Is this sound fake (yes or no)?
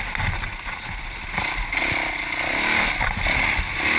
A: no